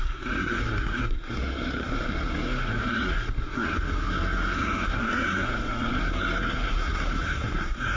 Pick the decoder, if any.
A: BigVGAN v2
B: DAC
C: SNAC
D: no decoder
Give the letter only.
C